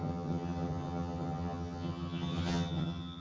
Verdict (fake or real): fake